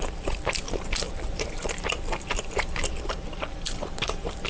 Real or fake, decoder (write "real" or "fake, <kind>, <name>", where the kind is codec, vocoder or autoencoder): fake, vocoder, BigVGAN v2